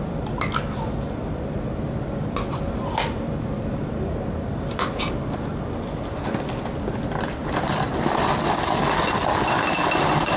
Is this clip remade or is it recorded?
recorded